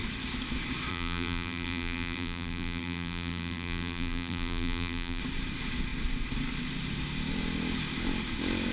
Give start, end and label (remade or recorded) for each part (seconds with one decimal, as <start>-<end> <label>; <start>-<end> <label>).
0.0-0.9 recorded; 0.9-5.2 remade; 5.2-8.7 recorded